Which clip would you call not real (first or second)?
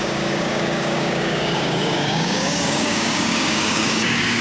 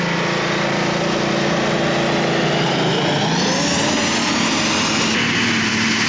first